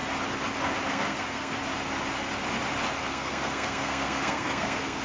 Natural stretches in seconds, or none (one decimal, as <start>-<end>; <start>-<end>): 0.0-0.9; 1.6-3.0